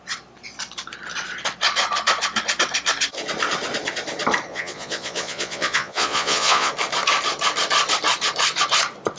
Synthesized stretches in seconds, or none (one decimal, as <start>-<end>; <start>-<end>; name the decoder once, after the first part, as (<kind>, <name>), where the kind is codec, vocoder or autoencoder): 4.5-6.7 (vocoder, Vocos)